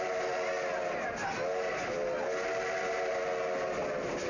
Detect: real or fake real